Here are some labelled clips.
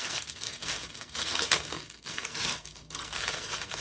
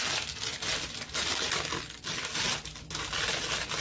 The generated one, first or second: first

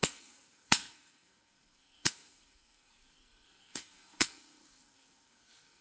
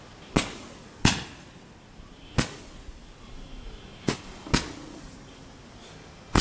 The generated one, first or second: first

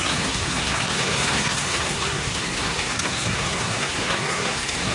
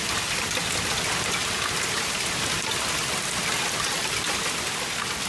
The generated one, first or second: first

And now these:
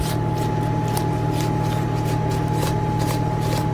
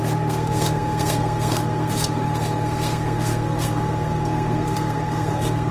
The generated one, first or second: second